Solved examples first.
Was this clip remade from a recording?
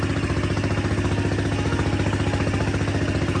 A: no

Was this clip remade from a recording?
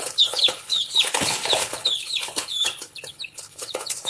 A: yes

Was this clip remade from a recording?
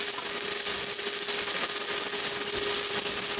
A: no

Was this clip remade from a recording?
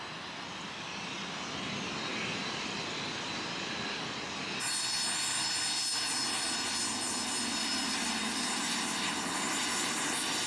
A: no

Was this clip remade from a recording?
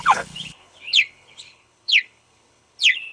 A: yes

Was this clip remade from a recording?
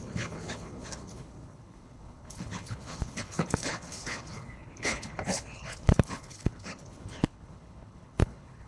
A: yes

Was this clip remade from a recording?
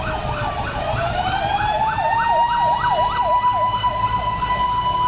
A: no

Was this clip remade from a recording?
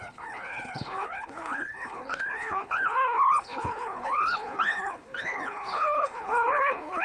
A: yes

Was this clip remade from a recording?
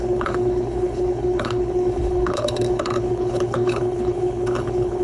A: yes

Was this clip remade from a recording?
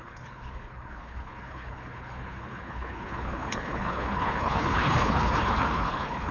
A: yes